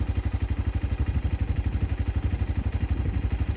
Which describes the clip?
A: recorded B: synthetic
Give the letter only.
A